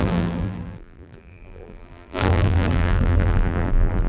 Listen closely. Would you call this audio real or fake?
fake